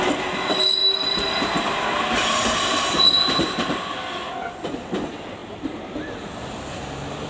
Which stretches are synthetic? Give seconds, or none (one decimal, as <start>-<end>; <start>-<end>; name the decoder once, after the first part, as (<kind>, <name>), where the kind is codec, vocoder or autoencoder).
0.8-2.0 (vocoder, BigVGAN v2); 3.2-3.8; 5.4-6.1